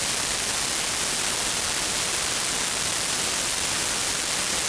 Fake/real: real